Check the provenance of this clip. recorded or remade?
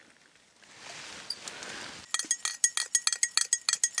recorded